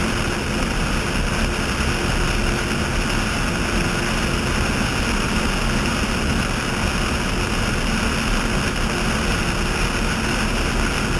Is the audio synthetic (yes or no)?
no